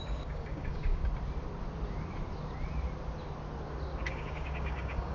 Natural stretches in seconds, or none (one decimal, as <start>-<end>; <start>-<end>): 1.0-4.1